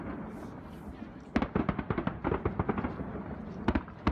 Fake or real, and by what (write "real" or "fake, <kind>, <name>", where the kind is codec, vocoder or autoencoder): real